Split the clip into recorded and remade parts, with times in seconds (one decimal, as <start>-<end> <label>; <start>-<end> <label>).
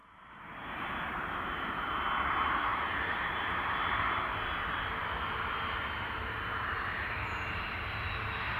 0.0-1.7 remade; 1.7-2.7 recorded; 2.7-4.2 remade; 4.2-8.6 recorded